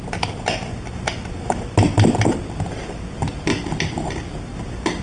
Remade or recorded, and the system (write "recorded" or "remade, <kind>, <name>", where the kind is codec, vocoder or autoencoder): recorded